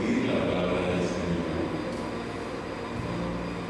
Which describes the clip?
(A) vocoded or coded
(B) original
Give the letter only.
B